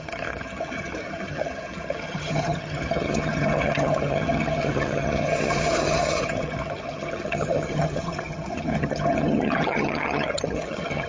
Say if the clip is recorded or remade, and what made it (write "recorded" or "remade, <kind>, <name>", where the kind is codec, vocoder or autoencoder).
remade, vocoder, HiFi-GAN